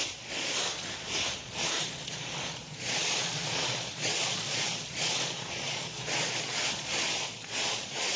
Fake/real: fake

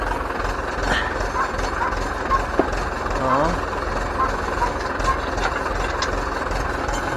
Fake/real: real